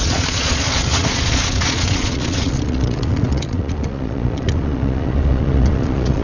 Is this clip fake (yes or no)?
yes